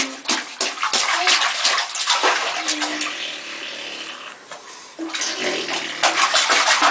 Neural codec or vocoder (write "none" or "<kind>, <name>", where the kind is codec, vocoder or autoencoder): none